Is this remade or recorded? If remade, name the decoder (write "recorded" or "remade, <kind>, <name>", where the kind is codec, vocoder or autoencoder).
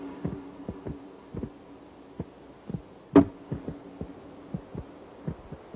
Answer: recorded